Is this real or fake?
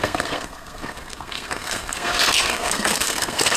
fake